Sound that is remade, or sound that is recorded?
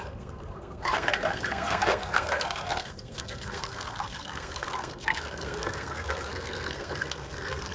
remade